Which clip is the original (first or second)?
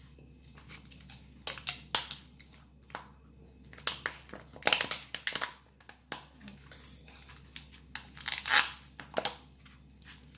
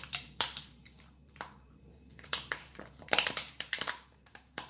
first